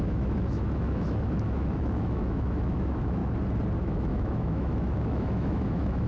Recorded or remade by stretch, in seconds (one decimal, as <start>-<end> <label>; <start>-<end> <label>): 0.0-3.2 remade; 3.2-3.8 recorded; 3.8-6.1 remade